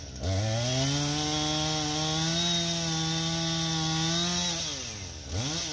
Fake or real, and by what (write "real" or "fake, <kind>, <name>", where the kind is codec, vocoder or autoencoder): real